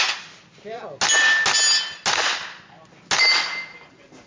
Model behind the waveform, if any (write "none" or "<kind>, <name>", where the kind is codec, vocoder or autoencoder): none